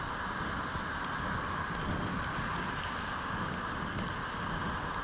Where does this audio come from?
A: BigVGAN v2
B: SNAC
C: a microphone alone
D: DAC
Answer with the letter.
C